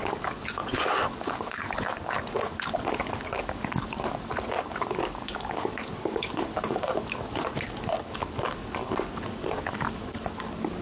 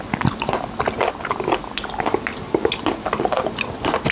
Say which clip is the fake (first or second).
first